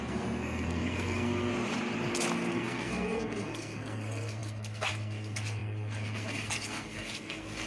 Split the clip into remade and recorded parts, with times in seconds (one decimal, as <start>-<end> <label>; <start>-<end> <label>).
0.0-1.5 remade; 1.5-2.5 recorded; 2.5-7.7 remade